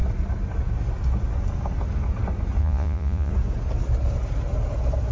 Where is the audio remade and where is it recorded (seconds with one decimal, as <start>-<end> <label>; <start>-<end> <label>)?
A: 0.0-2.6 recorded; 2.6-3.3 remade; 3.3-5.1 recorded